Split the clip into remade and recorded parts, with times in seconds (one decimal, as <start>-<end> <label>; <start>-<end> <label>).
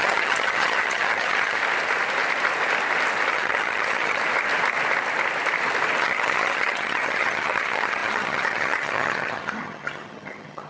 0.0-1.6 remade; 1.6-3.3 recorded; 3.3-4.2 remade; 4.2-6.0 recorded; 6.0-10.7 remade